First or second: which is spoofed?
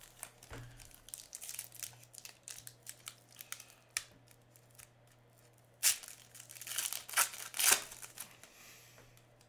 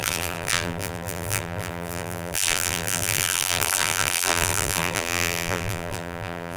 second